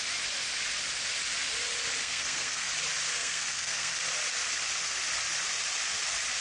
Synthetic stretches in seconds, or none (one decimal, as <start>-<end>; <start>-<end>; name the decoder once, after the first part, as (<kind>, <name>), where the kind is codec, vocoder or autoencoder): 2.0-2.7 (codec, SNAC); 3.1-4.0